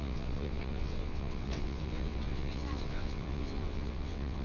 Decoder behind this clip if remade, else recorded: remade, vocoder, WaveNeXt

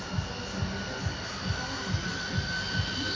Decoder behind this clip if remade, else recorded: recorded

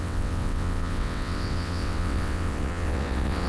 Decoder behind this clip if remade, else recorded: remade, vocoder, WaveNeXt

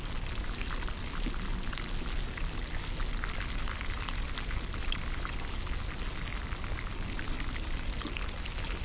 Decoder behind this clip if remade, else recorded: recorded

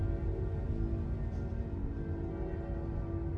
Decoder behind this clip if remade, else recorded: recorded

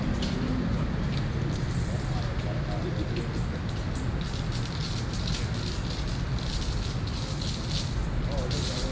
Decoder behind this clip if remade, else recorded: recorded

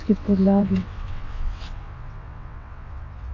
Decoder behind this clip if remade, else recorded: remade, vocoder, WaveNeXt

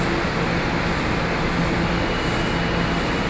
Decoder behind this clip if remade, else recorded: recorded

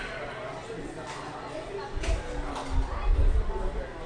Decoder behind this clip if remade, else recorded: recorded